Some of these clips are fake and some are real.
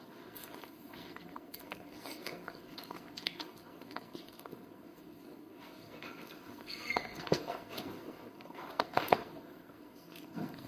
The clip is fake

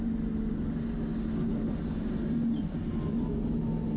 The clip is real